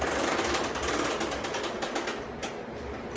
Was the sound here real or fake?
real